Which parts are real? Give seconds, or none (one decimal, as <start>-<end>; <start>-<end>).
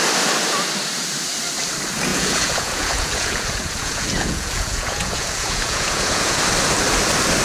0.0-2.1; 6.4-7.4